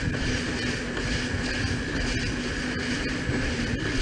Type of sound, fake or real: real